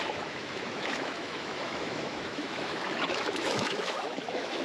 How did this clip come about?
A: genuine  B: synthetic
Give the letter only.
B